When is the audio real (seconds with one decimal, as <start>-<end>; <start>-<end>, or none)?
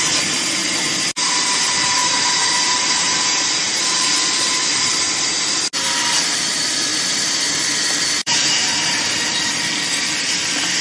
0.0-2.0; 4.3-6.9; 7.4-8.2; 9.1-10.8